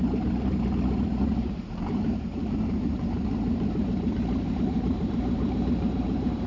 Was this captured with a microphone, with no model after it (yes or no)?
no